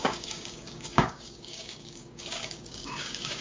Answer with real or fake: fake